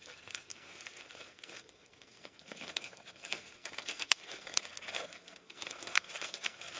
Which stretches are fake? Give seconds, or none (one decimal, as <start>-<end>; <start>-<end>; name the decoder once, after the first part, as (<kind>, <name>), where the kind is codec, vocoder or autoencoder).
0.0-6.8 (codec, SNAC)